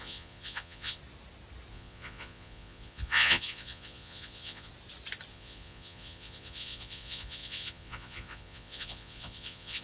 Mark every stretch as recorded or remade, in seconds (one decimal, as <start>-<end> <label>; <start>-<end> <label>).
0.0-1.0 remade; 1.0-1.7 recorded; 1.7-4.7 remade; 4.7-5.3 recorded; 5.3-9.8 remade

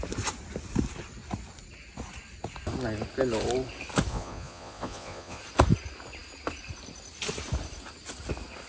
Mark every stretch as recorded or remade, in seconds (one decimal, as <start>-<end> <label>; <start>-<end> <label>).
0.0-4.1 recorded; 4.1-5.4 remade; 5.4-8.7 recorded

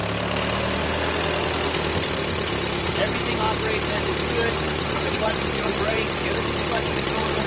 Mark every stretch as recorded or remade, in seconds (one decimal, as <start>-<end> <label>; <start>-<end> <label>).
0.0-4.5 recorded; 4.5-6.2 remade; 6.2-6.7 recorded; 6.7-7.5 remade

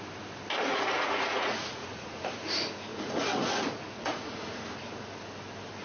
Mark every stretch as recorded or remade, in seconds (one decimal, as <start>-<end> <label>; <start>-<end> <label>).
0.0-0.7 recorded; 0.7-2.4 remade; 2.4-2.9 recorded; 2.9-4.6 remade; 4.6-5.8 recorded